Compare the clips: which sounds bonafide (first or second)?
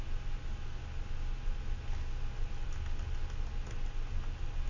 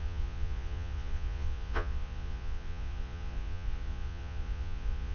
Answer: first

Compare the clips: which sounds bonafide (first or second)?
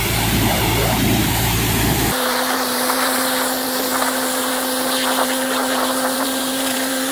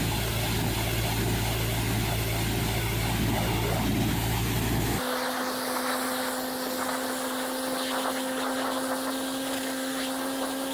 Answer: second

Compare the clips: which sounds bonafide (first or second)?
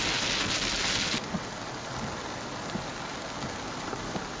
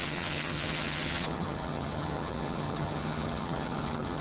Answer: first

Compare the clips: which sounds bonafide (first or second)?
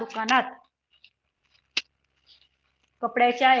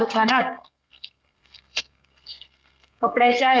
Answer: first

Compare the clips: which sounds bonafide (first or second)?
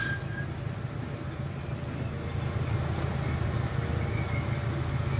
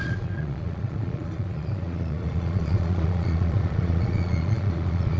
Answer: first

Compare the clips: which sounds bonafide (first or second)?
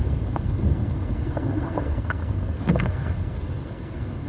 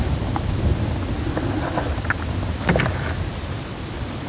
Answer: second